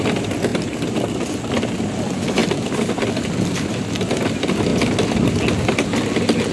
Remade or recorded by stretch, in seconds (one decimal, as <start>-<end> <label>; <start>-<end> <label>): 0.0-0.5 recorded; 0.5-1.3 remade; 1.3-6.5 recorded